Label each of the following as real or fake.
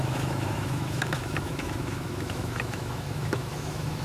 fake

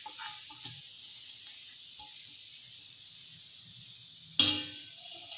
real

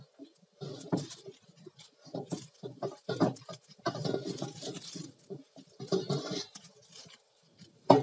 real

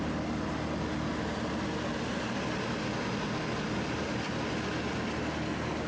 real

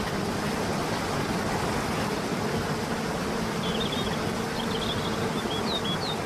real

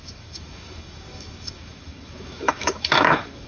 fake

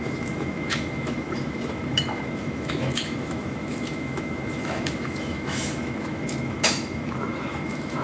fake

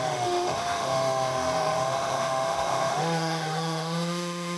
fake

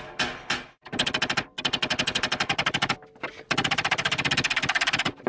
real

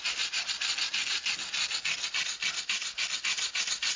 real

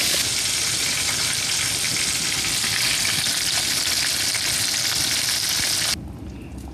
real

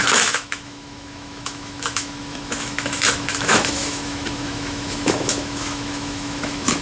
fake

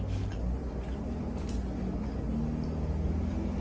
real